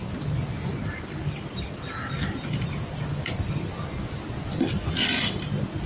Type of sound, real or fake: real